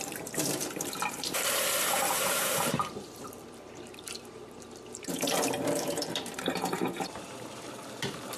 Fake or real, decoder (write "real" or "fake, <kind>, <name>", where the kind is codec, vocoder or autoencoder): fake, vocoder, BigVGAN v2